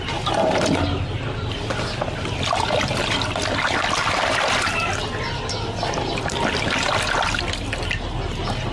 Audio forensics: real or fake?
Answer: real